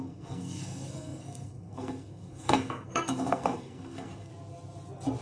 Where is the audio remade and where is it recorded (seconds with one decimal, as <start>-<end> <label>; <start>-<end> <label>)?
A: 0.0-4.3 remade; 4.3-5.2 recorded